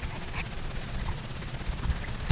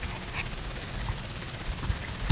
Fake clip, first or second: first